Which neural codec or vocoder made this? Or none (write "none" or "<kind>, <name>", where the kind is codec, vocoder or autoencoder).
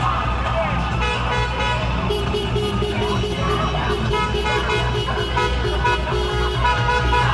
none